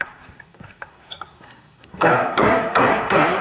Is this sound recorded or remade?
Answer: remade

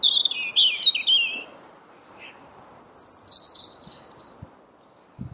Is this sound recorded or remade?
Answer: recorded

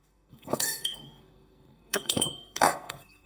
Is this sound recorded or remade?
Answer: remade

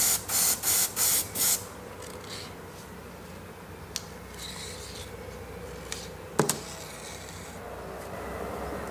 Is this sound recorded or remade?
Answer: recorded